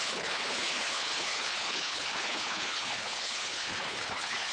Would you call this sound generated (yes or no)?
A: yes